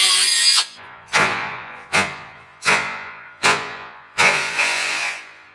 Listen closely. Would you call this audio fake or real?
fake